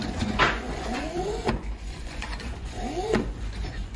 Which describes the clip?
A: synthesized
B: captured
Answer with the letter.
A